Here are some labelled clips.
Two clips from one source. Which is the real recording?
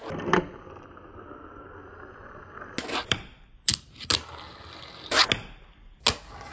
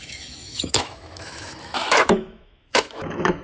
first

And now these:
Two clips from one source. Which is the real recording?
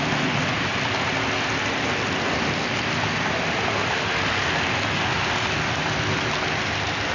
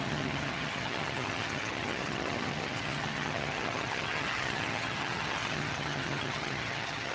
first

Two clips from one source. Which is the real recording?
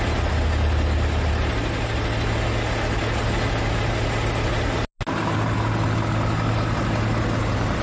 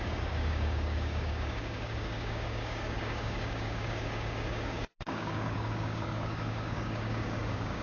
first